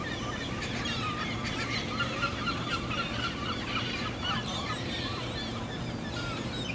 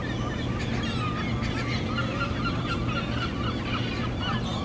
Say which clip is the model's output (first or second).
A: first